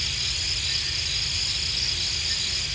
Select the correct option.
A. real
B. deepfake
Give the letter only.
A